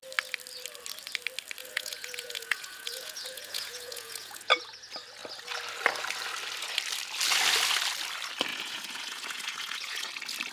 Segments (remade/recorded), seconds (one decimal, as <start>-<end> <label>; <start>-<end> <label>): 0.0-1.6 recorded; 1.6-4.5 remade; 4.5-8.5 recorded; 8.5-10.1 remade; 10.1-10.5 recorded